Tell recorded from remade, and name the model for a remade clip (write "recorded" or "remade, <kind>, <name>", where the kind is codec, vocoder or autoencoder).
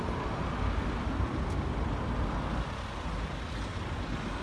recorded